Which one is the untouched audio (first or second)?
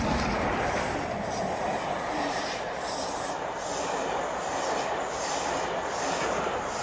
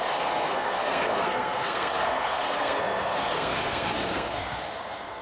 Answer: first